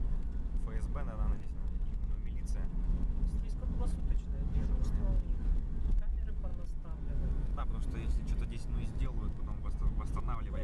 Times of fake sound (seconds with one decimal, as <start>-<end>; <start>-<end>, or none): none